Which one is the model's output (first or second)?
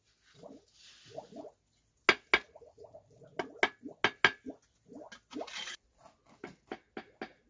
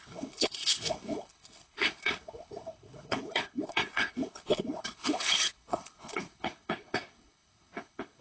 second